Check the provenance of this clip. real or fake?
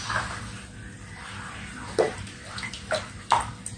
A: real